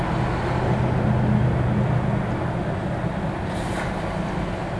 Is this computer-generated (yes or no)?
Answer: no